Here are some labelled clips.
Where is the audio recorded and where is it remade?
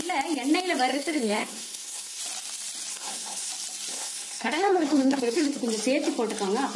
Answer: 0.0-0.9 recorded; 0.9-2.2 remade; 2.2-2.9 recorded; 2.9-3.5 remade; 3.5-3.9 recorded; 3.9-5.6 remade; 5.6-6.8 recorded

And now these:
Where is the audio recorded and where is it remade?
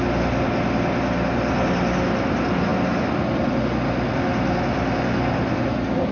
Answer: 0.0-6.1 recorded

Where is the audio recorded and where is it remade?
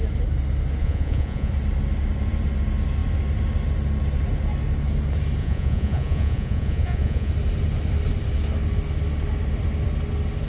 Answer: 0.0-0.8 recorded; 0.8-1.5 remade; 1.5-5.4 recorded; 5.4-7.3 remade; 7.3-10.5 recorded